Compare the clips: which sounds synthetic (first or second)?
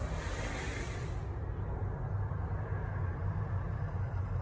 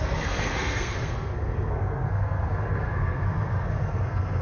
second